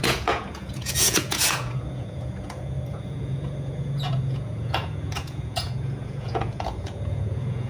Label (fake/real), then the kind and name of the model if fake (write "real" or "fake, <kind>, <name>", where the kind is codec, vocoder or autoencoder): fake, vocoder, Vocos